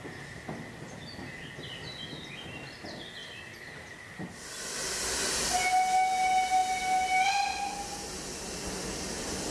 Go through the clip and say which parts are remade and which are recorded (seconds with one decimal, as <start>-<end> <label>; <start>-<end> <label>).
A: 0.0-9.5 recorded